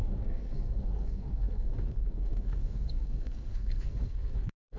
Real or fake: fake